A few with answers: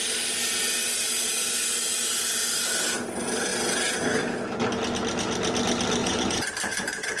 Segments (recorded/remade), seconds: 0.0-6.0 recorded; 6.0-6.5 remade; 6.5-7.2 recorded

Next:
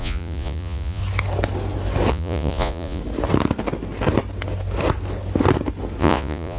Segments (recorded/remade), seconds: 0.0-1.0 remade; 1.0-2.1 recorded; 2.1-3.0 remade; 3.0-6.0 recorded; 6.0-6.6 remade

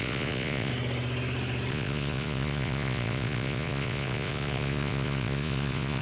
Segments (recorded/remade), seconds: 0.0-0.7 remade; 0.7-1.7 recorded; 1.7-6.0 remade

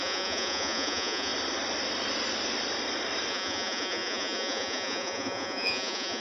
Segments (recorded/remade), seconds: 0.0-1.3 remade; 1.3-3.3 recorded; 3.3-6.2 remade

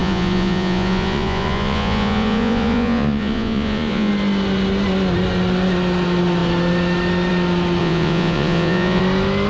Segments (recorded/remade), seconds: 0.0-4.1 remade; 4.1-7.8 recorded; 7.8-9.0 remade; 9.0-9.5 recorded

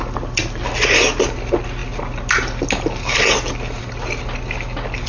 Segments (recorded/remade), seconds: 0.0-5.1 recorded